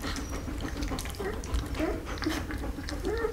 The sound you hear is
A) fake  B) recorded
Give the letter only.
A